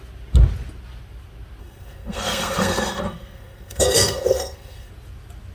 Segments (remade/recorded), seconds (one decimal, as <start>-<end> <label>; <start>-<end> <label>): 0.0-1.6 recorded; 1.6-4.9 remade; 4.9-5.5 recorded